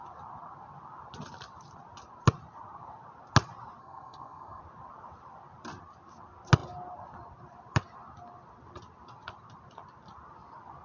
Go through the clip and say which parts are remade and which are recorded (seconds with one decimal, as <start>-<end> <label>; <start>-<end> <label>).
0.0-3.8 recorded; 3.8-4.6 remade; 4.6-10.8 recorded